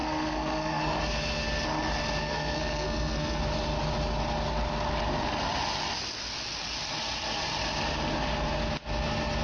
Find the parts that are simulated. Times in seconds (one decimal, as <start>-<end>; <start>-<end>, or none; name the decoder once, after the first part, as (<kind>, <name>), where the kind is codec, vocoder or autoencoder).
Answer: 0.0-0.8 (codec, SNAC); 2.2-3.4